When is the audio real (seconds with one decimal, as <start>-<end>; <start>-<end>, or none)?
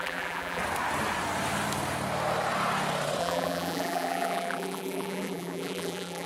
0.6-3.2